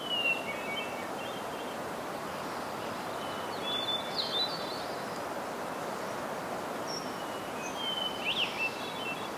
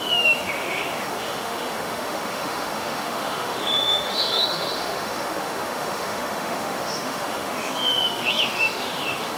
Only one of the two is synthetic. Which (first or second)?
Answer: second